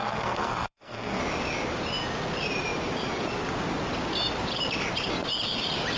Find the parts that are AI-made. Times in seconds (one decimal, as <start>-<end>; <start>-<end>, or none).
0.0-1.2